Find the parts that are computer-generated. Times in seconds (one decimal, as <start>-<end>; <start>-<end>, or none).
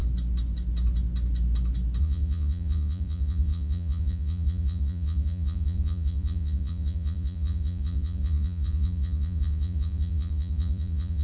2.0-11.2